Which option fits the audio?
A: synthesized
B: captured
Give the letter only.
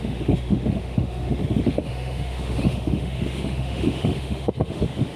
A